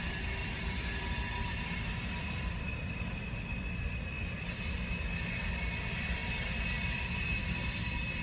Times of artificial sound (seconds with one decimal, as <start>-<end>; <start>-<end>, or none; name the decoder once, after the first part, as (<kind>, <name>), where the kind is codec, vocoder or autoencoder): 0.4-4.5 (vocoder, BigVGAN v2)